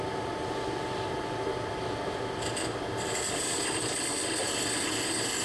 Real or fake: fake